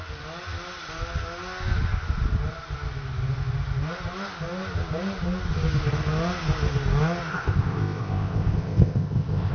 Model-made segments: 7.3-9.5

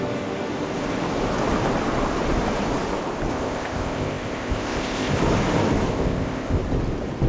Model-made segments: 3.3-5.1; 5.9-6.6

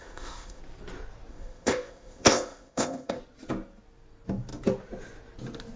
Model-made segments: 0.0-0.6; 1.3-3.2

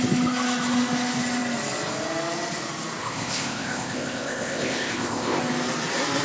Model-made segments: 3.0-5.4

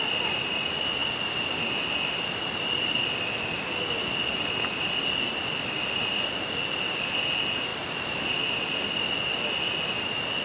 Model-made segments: none